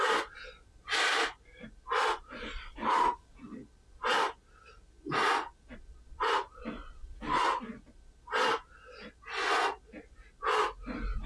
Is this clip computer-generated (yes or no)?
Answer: yes